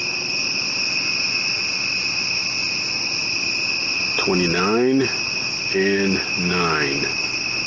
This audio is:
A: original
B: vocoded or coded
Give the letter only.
A